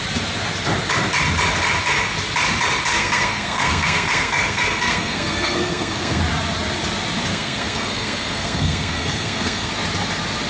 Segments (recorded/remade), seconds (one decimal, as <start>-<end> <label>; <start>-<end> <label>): 0.0-2.9 recorded; 2.9-6.2 remade; 6.2-7.3 recorded; 7.3-9.7 remade; 9.7-10.5 recorded